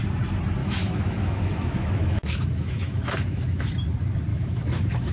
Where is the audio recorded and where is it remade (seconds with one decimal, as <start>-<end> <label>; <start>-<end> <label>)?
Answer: 0.0-0.6 recorded; 0.6-3.7 remade; 3.7-4.3 recorded; 4.3-5.1 remade